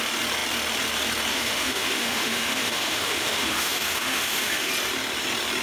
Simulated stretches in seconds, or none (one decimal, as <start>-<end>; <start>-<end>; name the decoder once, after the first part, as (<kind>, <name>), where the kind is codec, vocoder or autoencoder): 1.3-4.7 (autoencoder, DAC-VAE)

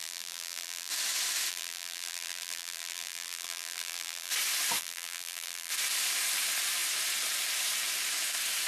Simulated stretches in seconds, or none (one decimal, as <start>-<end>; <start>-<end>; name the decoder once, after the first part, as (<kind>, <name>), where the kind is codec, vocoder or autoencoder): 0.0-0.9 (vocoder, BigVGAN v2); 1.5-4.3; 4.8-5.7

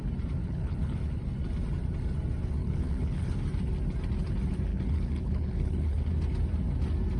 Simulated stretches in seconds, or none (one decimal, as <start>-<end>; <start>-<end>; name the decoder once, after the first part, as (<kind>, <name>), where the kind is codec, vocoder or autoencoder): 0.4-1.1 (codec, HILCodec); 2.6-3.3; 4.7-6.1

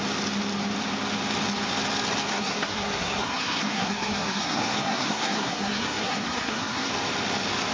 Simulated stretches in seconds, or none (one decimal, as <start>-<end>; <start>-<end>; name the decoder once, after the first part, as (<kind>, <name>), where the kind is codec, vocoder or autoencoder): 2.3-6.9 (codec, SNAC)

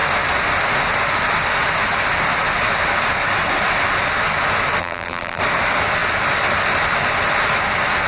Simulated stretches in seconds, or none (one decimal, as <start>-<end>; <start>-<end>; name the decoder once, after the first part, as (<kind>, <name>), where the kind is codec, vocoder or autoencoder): 4.8-5.4 (vocoder, BigVGAN v2)

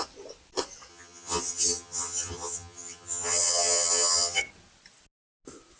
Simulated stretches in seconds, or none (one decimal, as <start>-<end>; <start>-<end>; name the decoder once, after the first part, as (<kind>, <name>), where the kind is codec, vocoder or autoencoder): 0.9-4.4 (vocoder, HiFi-GAN)

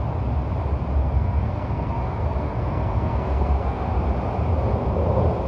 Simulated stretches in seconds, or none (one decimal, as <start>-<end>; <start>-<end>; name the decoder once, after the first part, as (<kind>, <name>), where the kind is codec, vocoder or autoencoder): 1.0-3.8 (codec, SNAC)

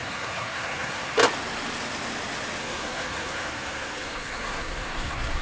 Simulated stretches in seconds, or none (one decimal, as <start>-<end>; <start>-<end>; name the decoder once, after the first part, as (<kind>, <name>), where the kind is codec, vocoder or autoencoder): 0.0-1.1 (codec, SNAC); 2.6-5.4